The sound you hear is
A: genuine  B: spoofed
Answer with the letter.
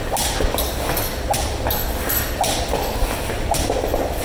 A